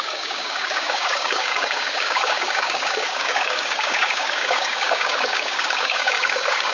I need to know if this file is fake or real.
fake